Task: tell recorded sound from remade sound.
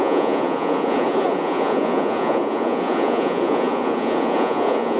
remade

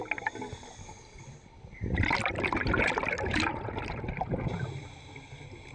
recorded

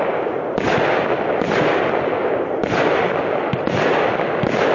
recorded